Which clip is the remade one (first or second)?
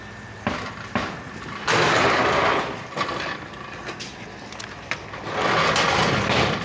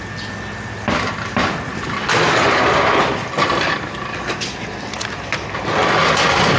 second